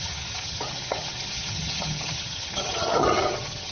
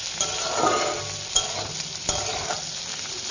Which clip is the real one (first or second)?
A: second